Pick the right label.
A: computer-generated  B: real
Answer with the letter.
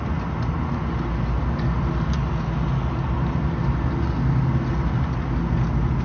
B